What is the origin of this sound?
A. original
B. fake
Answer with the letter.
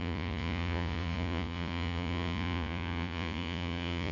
B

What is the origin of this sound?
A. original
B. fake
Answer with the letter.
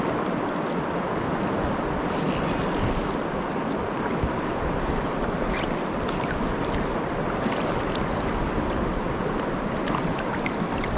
A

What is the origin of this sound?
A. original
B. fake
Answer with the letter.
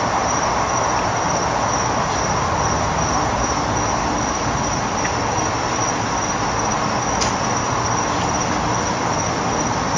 A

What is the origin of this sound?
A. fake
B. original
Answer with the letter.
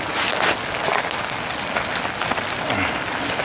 B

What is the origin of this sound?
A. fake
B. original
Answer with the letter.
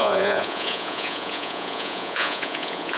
A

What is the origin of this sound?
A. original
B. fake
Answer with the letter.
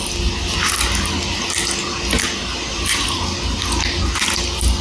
A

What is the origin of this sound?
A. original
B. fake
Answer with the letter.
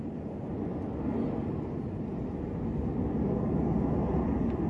A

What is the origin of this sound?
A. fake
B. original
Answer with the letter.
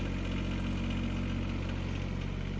B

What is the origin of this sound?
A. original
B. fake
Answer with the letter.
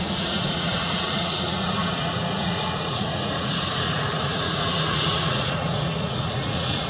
B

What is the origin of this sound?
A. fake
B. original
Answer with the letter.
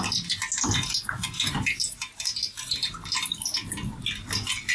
B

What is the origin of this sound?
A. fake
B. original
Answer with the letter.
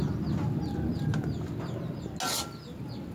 B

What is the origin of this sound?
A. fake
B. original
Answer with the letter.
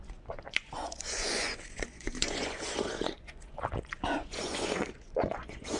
A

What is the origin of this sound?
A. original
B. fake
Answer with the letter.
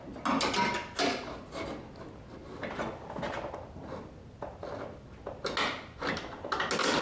A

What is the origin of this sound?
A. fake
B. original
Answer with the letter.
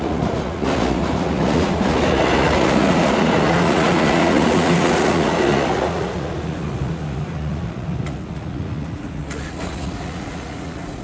A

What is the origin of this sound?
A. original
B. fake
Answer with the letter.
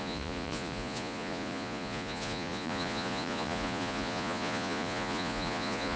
B